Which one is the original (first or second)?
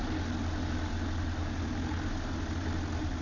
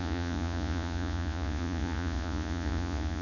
first